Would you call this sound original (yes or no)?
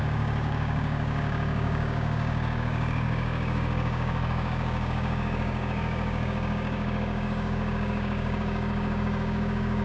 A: no